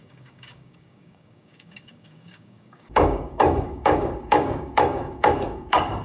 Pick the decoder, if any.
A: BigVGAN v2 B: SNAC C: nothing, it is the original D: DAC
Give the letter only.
D